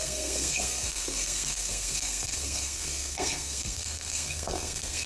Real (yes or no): no